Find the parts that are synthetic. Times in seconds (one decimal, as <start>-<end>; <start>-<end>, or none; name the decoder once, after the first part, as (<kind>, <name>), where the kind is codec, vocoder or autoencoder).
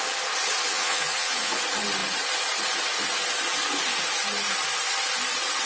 0.7-1.6 (vocoder, Vocos)